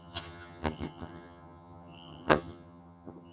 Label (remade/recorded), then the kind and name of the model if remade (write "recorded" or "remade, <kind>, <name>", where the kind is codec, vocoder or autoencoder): remade, vocoder, HiFi-GAN